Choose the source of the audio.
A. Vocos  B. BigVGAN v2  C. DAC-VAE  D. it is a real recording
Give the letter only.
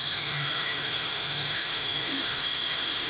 C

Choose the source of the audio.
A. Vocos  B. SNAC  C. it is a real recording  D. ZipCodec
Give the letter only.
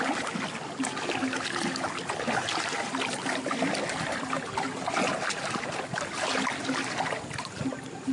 C